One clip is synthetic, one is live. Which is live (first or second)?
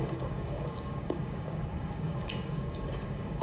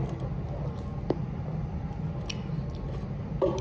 second